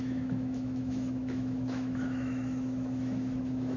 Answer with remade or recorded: remade